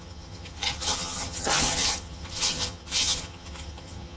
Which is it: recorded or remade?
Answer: remade